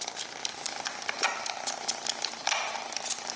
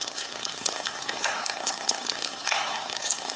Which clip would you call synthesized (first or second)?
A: second